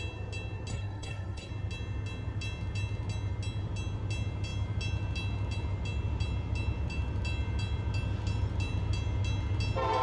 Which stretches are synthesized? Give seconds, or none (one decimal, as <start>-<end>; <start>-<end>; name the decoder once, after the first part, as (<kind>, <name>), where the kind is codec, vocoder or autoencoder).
0.7-1.5 (codec, SNAC)